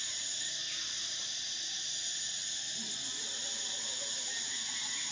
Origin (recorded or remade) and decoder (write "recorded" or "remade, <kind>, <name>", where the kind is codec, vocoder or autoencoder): recorded